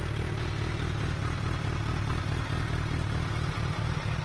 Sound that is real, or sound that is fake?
real